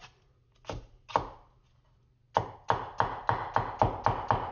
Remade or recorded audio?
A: recorded